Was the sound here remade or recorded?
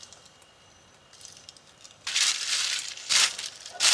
remade